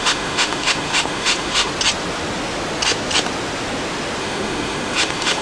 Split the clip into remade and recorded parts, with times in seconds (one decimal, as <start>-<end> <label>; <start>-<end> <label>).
0.0-1.7 remade; 1.7-4.2 recorded; 4.2-5.4 remade